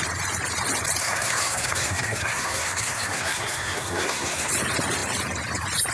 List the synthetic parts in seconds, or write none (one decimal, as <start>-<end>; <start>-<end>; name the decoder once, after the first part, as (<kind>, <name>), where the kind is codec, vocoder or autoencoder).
1.0-4.5 (codec, SNAC)